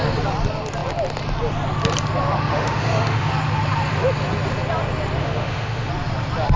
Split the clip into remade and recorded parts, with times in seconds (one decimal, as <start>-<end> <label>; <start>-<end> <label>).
0.0-2.5 recorded; 2.5-3.3 remade; 3.3-5.2 recorded; 5.2-5.9 remade; 5.9-6.6 recorded